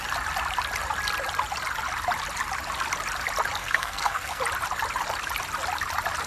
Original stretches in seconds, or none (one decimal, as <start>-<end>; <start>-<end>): 0.0-3.6; 4.4-6.3